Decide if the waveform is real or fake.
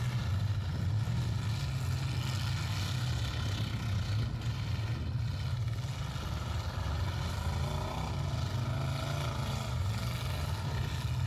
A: real